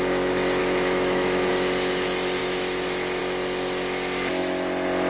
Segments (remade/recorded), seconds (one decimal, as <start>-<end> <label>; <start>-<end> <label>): 0.0-0.6 recorded; 0.6-1.5 remade; 1.5-2.4 recorded; 2.4-3.2 remade; 3.2-5.1 recorded